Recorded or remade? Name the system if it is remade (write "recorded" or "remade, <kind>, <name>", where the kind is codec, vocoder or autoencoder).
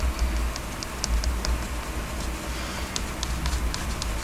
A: recorded